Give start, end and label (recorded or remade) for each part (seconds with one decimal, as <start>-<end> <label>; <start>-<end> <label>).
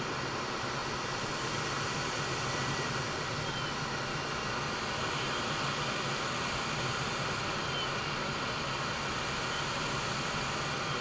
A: 0.0-11.0 recorded